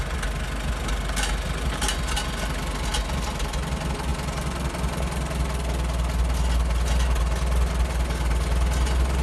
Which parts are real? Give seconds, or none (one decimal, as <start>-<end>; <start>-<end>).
0.0-9.2